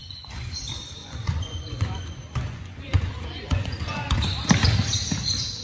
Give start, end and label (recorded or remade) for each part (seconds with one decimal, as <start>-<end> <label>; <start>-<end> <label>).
0.0-0.6 remade; 0.6-1.0 recorded; 1.0-4.4 remade; 4.4-5.6 recorded